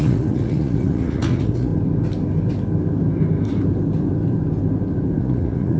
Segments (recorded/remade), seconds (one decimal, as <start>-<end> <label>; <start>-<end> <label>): 0.0-1.7 remade; 1.7-5.2 recorded; 5.2-5.8 remade